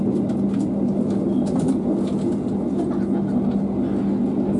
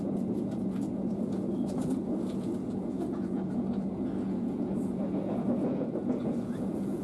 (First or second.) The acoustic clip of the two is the first